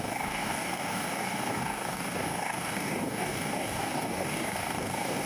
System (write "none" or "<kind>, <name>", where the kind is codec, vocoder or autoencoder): codec, DAC